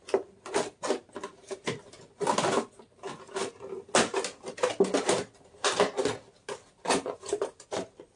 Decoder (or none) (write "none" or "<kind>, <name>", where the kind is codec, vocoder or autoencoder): none